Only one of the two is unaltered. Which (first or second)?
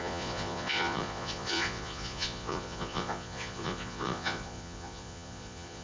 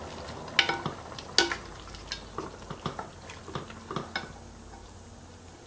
second